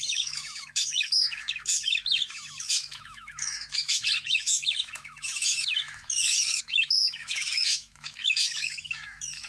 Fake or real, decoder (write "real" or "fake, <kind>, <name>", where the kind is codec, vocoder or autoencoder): fake, autoencoder, DAC-VAE